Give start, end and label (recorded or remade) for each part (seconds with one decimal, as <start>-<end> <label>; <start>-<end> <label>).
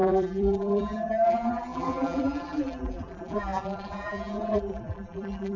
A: 0.0-5.6 remade